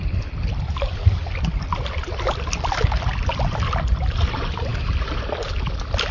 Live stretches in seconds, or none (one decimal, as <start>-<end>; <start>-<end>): 0.0-6.1